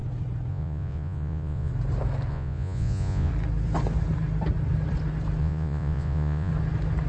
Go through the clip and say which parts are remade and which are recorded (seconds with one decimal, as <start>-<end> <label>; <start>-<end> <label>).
0.0-0.5 recorded; 0.5-1.7 remade; 1.7-2.3 recorded; 2.3-3.3 remade; 3.3-5.4 recorded; 5.4-6.5 remade; 6.5-7.1 recorded